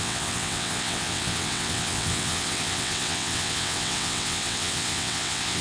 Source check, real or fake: fake